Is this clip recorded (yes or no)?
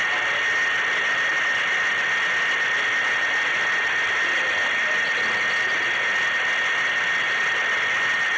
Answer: yes